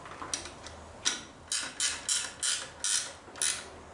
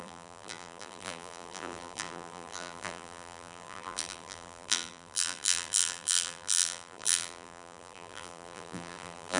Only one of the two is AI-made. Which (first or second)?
second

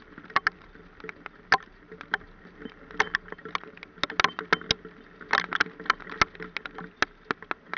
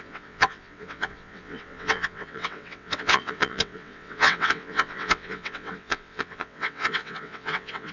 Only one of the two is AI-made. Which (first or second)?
second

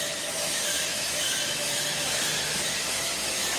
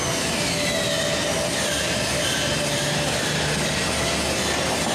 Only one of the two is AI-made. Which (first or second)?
first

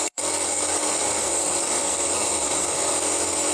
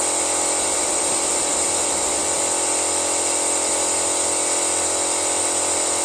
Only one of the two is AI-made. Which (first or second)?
first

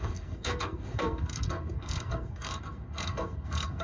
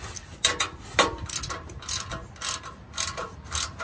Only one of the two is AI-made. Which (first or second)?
first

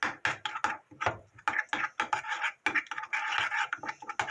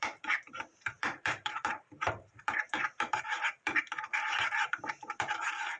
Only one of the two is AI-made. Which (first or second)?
second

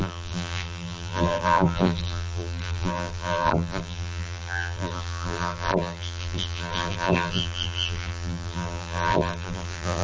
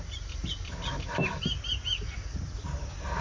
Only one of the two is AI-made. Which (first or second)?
first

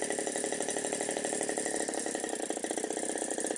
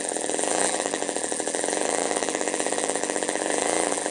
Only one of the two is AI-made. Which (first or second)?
second